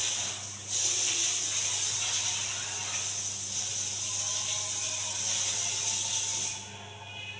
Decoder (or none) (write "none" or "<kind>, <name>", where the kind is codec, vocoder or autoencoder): none